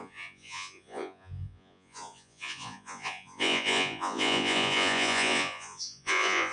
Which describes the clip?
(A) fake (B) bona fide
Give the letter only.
A